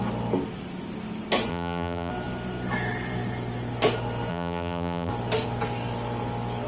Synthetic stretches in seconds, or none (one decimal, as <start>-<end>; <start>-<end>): 1.5-2.1; 4.3-5.1